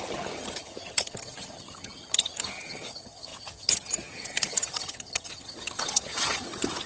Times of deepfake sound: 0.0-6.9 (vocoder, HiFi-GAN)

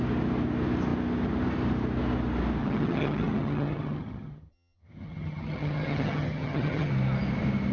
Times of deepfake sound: 2.6-6.9 (vocoder, HiFi-GAN)